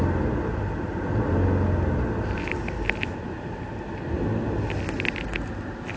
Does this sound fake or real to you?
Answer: real